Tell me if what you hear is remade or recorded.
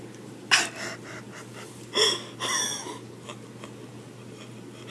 recorded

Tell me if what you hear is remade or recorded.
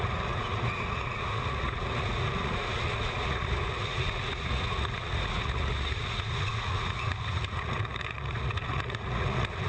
remade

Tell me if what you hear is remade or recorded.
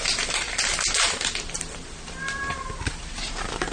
recorded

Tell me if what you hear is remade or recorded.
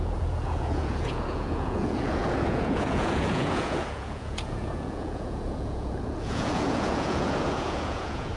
remade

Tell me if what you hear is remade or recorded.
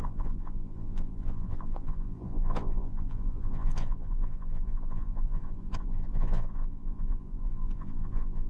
remade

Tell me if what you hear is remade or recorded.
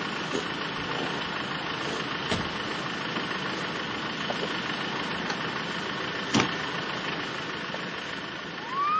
recorded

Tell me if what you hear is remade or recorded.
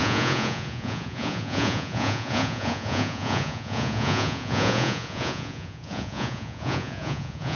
remade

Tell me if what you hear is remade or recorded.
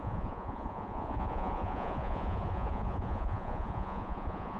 remade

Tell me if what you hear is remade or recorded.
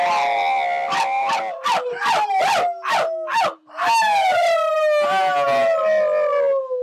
recorded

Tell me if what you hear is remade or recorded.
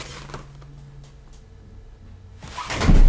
recorded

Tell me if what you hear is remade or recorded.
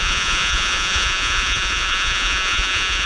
remade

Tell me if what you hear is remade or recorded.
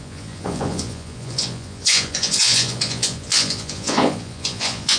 remade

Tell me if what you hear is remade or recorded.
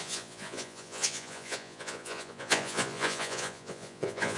remade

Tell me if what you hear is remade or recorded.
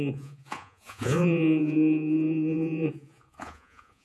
remade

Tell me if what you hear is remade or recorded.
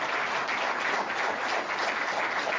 recorded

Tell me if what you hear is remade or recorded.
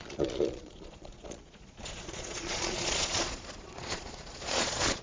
remade